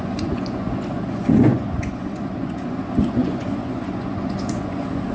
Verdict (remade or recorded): remade